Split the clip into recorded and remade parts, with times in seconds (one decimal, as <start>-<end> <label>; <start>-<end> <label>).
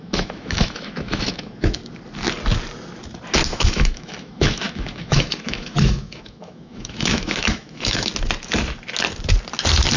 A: 0.0-1.8 remade; 1.8-3.5 recorded; 3.5-8.1 remade; 8.1-10.0 recorded